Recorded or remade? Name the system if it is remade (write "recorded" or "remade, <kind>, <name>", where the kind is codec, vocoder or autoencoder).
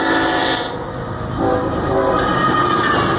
recorded